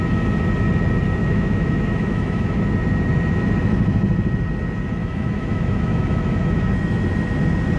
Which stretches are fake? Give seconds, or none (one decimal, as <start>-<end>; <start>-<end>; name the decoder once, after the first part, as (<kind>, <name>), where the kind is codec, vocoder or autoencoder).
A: 1.2-2.6 (autoencoder, DAC-VAE); 5.0-6.7